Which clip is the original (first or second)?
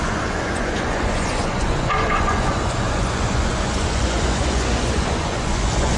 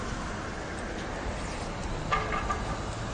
second